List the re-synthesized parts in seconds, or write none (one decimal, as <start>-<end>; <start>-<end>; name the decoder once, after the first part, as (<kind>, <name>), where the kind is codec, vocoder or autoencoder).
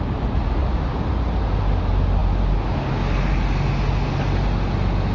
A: none